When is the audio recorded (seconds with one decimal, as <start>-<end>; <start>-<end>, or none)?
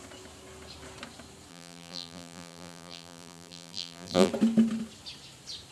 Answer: 0.0-1.5; 4.3-5.7